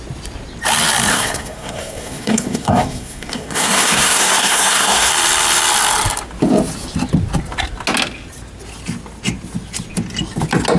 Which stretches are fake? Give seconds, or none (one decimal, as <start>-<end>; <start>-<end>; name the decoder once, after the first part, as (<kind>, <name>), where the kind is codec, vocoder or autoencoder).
1.1-5.1 (codec, SNAC)